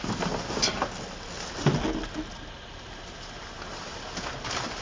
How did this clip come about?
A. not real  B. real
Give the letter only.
B